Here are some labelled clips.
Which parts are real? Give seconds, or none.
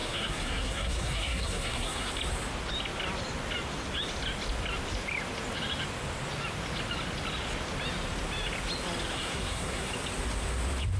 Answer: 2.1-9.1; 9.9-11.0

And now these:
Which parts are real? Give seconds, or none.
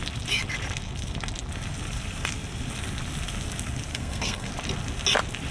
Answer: 0.0-3.9; 4.5-5.5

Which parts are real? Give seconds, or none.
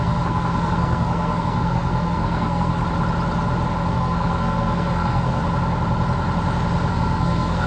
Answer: 2.8-3.9; 5.4-6.9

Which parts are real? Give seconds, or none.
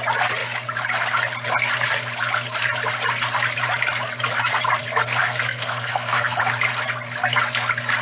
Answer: 0.0-5.2; 6.4-8.0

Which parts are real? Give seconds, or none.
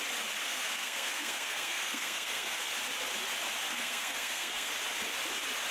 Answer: 0.0-0.4; 2.7-3.7; 4.7-5.7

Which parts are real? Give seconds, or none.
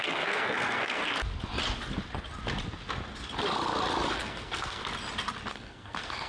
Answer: 1.0-4.1; 4.8-5.5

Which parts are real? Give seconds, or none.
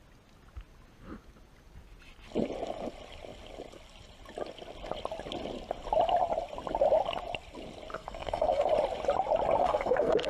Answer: 0.0-7.9; 8.7-9.6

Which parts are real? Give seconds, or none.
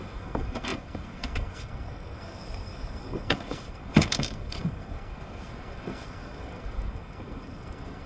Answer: none